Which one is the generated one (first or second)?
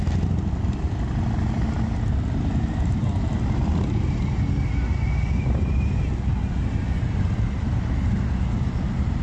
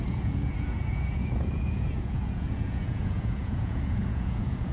second